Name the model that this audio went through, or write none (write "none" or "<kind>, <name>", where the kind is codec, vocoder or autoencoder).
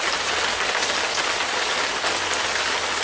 none